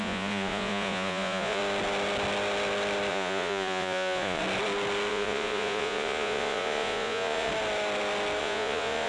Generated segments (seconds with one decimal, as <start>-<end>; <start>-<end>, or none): 0.0-1.6; 3.1-4.4; 5.1-7.5; 8.4-9.1